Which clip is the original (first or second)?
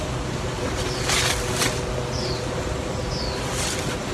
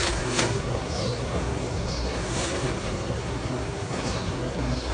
first